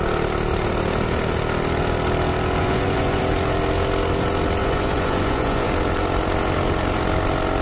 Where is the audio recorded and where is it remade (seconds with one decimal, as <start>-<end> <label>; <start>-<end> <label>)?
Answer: 0.0-2.6 recorded; 2.6-3.2 remade; 3.2-4.6 recorded; 4.6-5.7 remade; 5.7-7.6 recorded